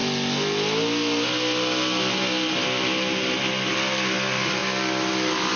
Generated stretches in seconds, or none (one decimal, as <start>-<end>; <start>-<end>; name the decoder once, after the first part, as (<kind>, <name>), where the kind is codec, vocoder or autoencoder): none